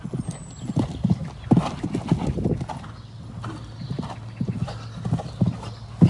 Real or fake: real